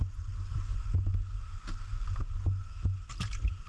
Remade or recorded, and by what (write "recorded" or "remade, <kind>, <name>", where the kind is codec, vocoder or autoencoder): recorded